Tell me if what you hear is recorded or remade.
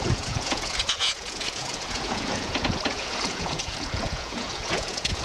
remade